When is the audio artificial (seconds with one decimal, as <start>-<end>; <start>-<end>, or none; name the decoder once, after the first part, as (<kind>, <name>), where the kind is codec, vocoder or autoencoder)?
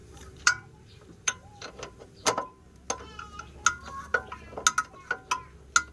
0.0-2.5 (vocoder, BigVGAN v2)